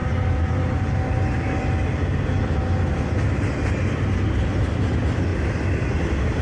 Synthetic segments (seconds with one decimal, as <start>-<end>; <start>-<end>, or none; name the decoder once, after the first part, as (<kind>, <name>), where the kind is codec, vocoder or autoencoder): none